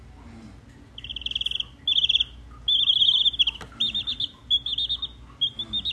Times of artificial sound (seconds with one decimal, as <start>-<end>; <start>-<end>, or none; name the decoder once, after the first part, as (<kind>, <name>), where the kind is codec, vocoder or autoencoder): none